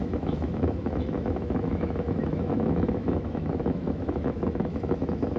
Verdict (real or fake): fake